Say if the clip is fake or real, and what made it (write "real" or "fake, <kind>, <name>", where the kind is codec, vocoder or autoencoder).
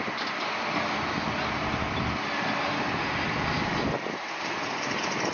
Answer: real